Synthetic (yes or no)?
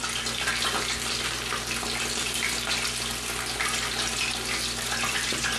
no